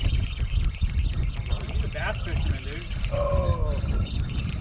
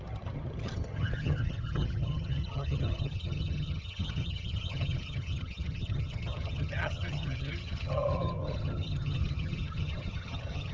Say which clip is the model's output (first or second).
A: second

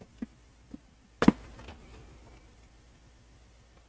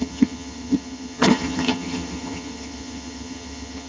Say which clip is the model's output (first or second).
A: second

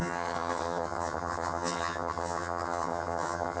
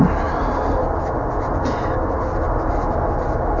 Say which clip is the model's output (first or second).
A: first